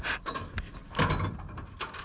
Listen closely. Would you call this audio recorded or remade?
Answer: recorded